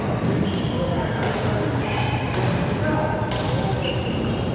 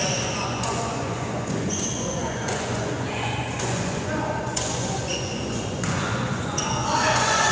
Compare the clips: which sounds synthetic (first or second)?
second